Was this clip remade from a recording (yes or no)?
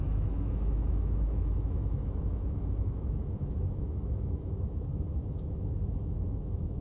yes